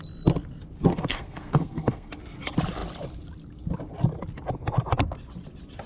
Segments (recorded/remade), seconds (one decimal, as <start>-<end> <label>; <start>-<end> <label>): 0.0-0.9 recorded; 0.9-2.1 remade; 2.1-5.9 recorded